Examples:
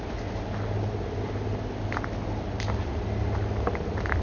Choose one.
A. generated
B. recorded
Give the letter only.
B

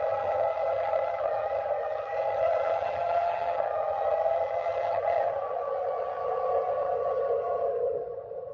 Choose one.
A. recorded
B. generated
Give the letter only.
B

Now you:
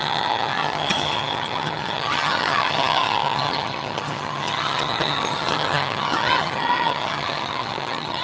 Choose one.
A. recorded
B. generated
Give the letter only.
B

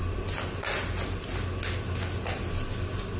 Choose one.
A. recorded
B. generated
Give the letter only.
A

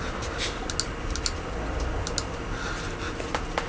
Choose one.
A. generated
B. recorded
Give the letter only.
B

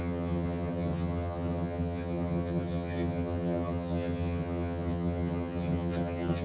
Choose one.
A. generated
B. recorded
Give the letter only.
A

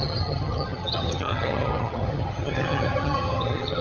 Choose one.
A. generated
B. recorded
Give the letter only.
A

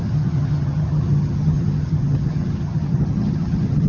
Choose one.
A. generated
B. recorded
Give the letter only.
A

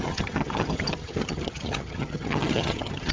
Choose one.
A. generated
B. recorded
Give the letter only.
A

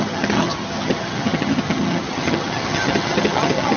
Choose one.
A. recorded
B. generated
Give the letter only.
B